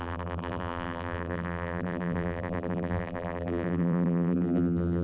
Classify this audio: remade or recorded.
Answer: remade